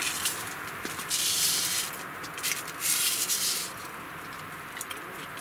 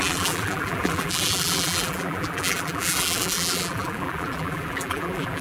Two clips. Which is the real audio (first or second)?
first